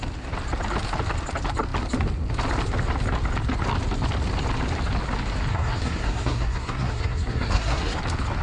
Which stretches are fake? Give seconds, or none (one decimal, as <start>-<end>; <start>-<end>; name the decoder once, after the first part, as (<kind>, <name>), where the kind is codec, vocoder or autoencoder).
5.5-8.0 (codec, SNAC)